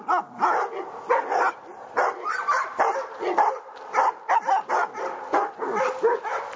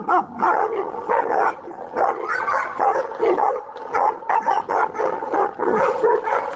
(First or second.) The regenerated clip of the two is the second